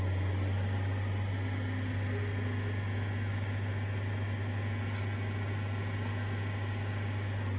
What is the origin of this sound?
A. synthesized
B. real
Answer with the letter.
B